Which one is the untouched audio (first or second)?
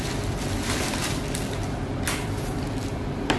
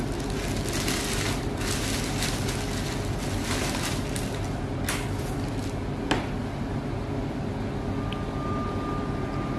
second